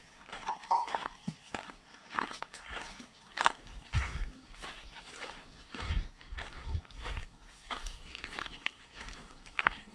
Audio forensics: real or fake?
fake